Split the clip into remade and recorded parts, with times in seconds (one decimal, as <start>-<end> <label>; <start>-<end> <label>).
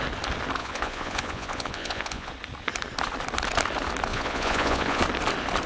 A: 0.0-0.6 recorded; 0.6-2.3 remade; 2.3-4.1 recorded; 4.1-5.0 remade; 5.0-5.7 recorded